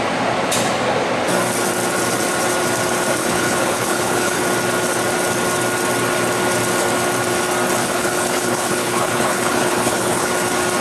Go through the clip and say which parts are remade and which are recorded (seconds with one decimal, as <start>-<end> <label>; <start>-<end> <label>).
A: 0.0-3.2 recorded; 3.2-4.4 remade; 4.4-7.8 recorded; 7.8-10.3 remade; 10.3-10.8 recorded